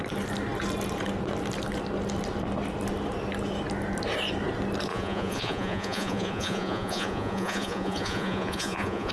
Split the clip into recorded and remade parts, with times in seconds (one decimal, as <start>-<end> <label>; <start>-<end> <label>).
0.0-4.9 recorded; 4.9-9.1 remade